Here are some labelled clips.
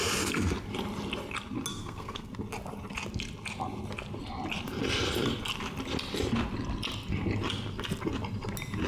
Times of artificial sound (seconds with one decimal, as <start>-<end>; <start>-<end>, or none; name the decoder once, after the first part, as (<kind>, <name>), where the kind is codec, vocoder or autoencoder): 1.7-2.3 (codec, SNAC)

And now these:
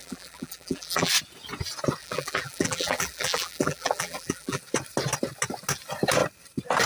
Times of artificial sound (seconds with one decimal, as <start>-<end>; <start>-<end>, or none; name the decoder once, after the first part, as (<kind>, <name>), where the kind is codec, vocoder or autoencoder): 0.0-1.1 (vocoder, BigVGAN v2); 2.0-4.6

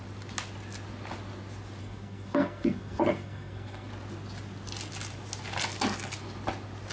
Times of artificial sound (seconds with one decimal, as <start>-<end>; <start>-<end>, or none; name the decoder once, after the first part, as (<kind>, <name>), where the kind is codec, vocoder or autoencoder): 1.8-3.9 (codec, SNAC)